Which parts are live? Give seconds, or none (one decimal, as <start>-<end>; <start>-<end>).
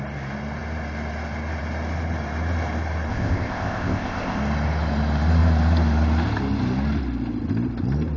0.0-3.1; 4.4-8.2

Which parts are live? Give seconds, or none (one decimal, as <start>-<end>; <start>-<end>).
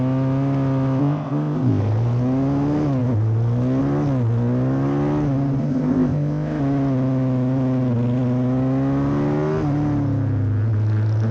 0.0-1.0; 1.8-5.6; 6.6-11.3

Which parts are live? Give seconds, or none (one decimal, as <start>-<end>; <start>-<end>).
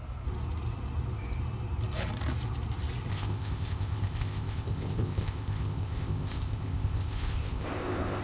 0.0-3.1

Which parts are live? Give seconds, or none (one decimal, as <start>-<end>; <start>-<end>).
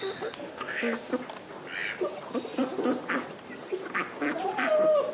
0.0-0.5; 1.1-5.1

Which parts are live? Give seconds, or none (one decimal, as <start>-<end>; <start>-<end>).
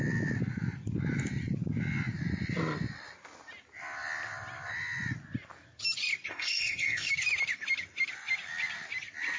0.0-6.3; 7.1-9.4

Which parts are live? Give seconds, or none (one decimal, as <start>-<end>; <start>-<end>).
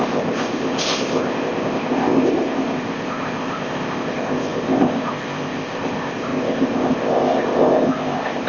none